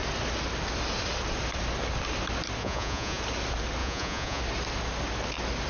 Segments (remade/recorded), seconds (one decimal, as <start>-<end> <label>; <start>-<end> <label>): 0.0-2.6 recorded; 2.6-3.2 remade; 3.2-3.8 recorded; 3.8-4.4 remade; 4.4-5.7 recorded